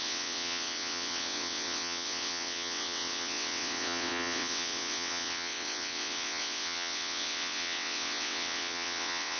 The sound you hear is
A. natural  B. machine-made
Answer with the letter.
B